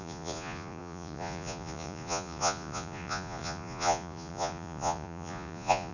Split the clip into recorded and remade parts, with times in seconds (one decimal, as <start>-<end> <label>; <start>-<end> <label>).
0.0-5.9 remade